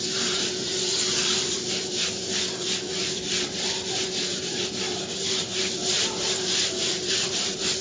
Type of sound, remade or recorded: remade